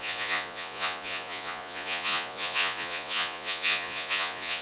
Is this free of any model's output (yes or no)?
no